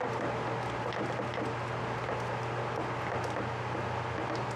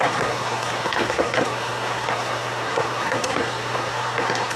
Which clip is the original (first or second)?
first